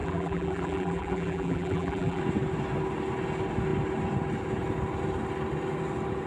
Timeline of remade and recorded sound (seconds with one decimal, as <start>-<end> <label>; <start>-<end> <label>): 0.0-2.2 remade; 2.2-6.3 recorded